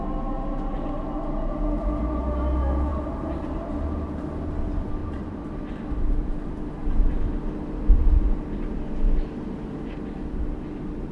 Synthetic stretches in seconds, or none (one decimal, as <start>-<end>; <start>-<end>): 2.9-3.7; 5.0-5.5